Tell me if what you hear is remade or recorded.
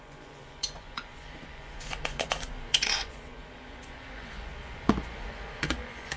remade